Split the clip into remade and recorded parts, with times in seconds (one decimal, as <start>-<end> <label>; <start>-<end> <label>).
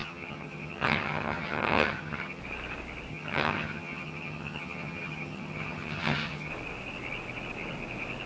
0.0-2.4 remade; 2.4-3.1 recorded; 3.1-6.5 remade; 6.5-8.3 recorded